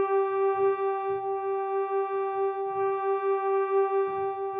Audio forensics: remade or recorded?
recorded